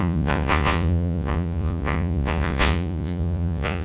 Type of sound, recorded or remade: remade